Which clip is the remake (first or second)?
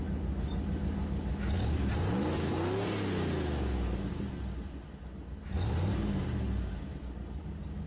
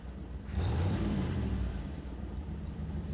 second